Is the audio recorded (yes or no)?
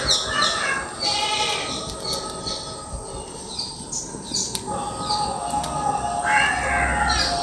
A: yes